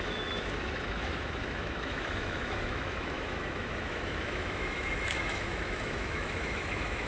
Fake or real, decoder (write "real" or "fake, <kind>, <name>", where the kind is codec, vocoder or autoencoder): fake, autoencoder, DAC-VAE